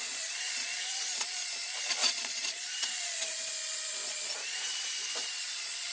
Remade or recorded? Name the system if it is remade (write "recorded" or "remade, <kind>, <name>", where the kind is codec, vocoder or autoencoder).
remade, vocoder, Vocos